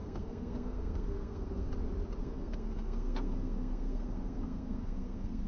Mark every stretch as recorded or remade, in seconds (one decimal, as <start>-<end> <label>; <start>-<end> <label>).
0.0-1.7 remade; 1.7-2.2 recorded; 2.2-5.5 remade